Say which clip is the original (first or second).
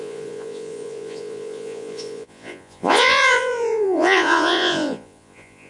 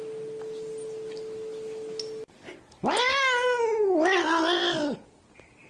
second